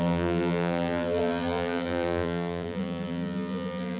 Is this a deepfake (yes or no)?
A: yes